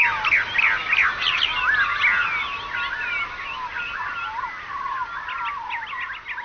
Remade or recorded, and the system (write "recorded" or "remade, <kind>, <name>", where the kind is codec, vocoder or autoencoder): recorded